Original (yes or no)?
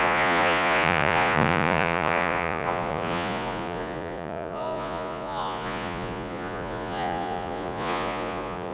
no